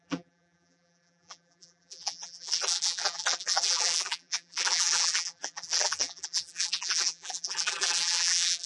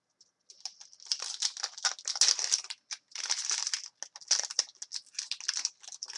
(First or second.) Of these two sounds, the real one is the second